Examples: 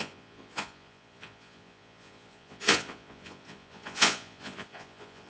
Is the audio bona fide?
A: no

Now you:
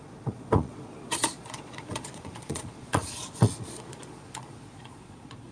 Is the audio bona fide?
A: no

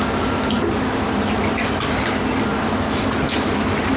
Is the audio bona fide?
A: yes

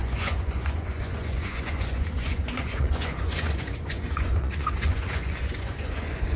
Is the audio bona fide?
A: no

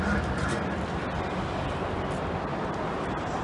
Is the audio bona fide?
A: yes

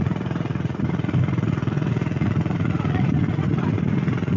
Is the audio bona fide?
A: no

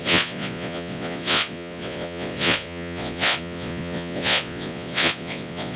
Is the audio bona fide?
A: no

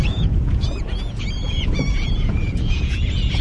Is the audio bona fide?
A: no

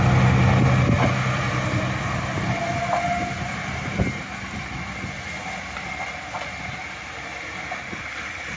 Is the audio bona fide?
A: yes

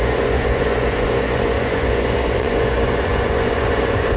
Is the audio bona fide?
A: no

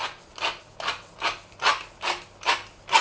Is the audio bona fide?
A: yes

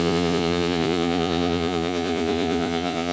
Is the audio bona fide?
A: no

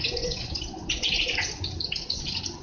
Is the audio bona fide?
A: no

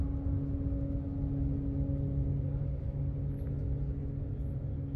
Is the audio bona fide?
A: yes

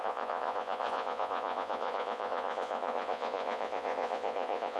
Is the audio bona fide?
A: no